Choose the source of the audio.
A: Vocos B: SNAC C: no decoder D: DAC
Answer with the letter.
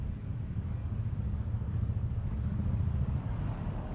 D